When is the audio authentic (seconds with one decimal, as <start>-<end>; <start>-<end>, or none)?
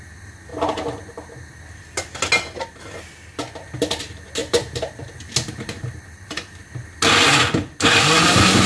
0.0-8.7